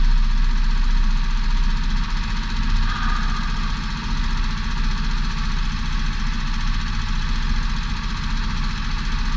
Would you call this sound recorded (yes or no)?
yes